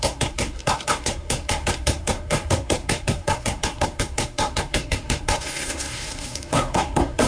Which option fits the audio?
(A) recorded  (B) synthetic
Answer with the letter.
B